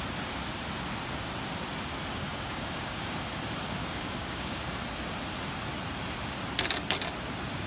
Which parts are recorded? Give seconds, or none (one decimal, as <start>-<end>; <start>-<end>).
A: 0.0-2.1; 3.1-3.8; 4.6-7.7

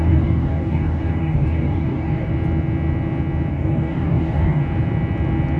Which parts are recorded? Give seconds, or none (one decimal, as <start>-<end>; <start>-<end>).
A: 2.3-3.5; 4.6-5.6

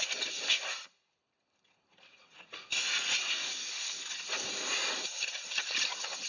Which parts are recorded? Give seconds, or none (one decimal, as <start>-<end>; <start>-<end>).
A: 0.0-3.4; 4.1-6.3

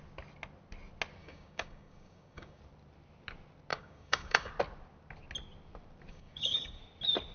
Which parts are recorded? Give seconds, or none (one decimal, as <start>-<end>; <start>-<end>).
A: 0.0-1.2; 2.6-3.7; 4.5-6.1; 6.8-7.3

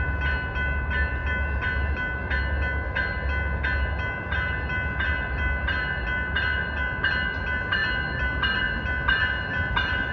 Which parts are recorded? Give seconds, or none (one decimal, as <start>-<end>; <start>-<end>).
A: 0.0-10.1

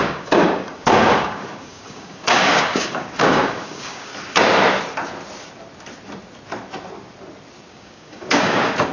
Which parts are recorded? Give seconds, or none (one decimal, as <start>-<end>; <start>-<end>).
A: 4.1-7.7

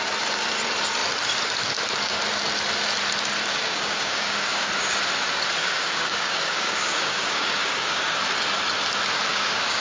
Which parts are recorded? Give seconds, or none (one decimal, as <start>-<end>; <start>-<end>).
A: 0.0-3.5; 4.7-5.6; 8.2-9.3

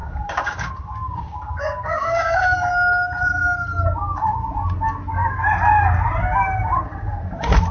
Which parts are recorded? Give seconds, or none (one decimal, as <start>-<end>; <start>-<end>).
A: 2.7-7.7